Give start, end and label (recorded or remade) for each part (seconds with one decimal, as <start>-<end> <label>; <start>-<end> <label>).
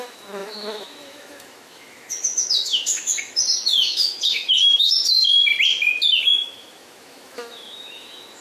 0.0-5.5 remade; 5.5-6.2 recorded; 6.2-8.4 remade